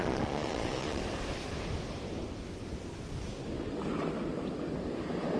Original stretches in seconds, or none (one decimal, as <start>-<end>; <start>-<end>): 1.0-5.4